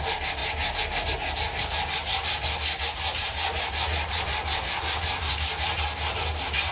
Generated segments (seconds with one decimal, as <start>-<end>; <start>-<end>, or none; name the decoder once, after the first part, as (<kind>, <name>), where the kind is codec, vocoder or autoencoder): none

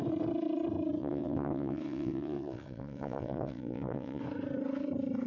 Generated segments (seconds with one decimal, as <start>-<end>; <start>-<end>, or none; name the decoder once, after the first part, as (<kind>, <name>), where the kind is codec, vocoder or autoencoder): 1.0-4.2 (vocoder, WaveNeXt)

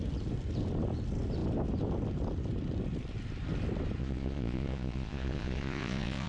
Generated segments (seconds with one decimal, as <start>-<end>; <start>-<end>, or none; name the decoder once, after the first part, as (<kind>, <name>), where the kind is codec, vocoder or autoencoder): 4.0-6.3 (vocoder, Vocos)

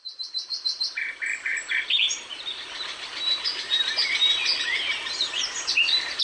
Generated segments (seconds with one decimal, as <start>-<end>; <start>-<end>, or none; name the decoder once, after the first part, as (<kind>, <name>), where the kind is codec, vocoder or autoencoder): 0.0-6.2 (vocoder, BigVGAN v2)

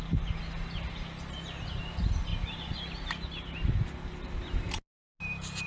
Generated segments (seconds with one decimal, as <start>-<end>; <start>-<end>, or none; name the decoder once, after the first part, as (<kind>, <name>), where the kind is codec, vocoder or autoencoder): none

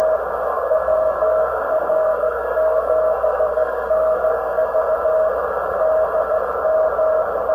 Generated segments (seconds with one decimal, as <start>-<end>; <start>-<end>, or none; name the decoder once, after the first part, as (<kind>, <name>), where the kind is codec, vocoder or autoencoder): 0.5-4.9 (codec, SNAC)

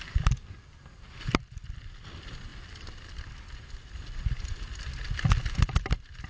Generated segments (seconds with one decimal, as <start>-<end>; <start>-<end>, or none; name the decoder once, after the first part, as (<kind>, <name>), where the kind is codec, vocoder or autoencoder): none

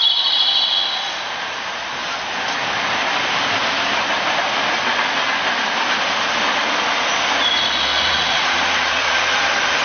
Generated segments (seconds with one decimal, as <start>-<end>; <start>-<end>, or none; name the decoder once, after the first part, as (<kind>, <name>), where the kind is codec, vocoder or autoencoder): 7.9-9.4 (vocoder, Vocos)